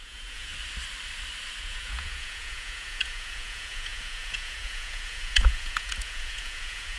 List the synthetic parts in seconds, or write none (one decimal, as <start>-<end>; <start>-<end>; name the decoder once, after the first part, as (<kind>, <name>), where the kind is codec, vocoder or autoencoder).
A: 0.0-0.5 (vocoder, Vocos); 1.6-7.0